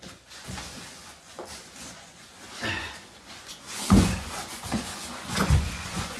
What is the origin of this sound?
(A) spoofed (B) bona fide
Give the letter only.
A